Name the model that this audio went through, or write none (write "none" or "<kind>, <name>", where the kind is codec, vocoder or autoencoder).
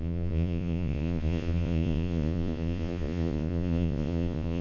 vocoder, Vocos